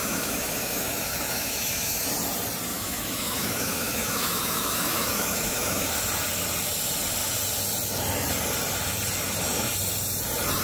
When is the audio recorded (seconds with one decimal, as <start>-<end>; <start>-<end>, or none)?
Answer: 2.1-2.7; 5.9-10.6